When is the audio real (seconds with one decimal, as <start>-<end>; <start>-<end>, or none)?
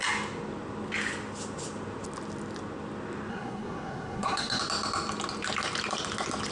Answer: 0.0-3.3; 4.6-6.5